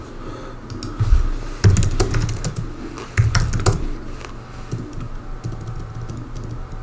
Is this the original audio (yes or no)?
yes